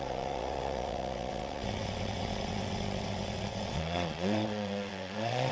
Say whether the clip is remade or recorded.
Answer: remade